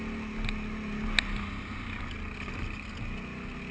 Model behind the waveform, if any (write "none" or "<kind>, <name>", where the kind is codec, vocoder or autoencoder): none